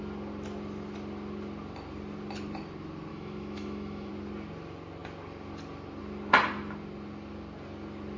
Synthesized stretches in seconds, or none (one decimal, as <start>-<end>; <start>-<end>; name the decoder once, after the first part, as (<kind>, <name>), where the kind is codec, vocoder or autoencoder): 3.1-4.1 (autoencoder, DAC-VAE)